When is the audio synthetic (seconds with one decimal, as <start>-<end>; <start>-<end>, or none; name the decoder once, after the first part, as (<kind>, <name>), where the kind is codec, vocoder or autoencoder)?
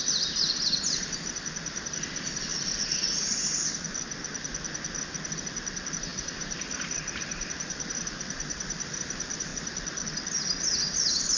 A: 0.0-2.5 (vocoder, BigVGAN v2); 5.4-9.5